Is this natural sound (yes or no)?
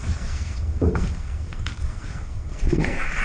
no